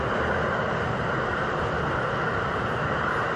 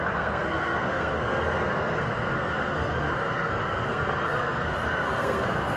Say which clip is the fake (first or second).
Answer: second